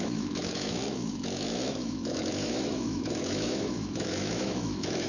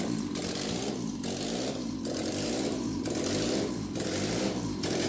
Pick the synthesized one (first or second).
first